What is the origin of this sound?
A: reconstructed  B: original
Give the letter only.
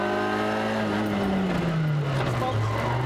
B